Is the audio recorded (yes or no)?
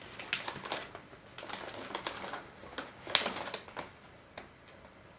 yes